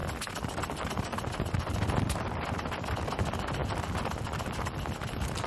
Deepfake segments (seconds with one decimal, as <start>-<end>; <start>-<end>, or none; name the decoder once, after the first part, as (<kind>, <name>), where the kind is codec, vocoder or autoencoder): 0.0-5.5 (vocoder, BigVGAN v2)